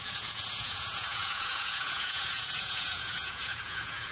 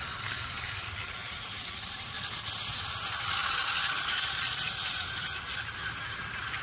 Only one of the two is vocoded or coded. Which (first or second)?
first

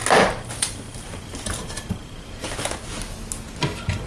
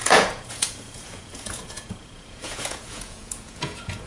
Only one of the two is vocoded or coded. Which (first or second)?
second